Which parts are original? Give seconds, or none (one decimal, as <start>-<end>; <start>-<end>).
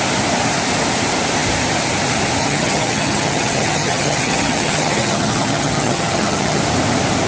0.0-2.4; 6.6-7.3